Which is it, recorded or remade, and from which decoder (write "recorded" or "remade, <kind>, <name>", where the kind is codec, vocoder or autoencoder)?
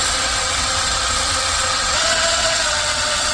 remade, vocoder, WaveNeXt